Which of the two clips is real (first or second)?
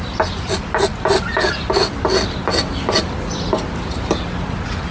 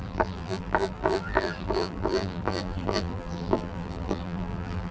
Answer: first